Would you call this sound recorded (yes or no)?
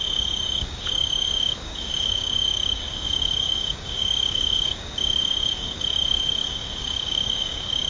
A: no